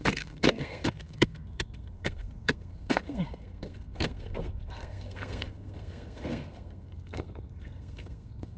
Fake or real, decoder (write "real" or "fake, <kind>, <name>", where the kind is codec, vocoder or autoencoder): fake, codec, SNAC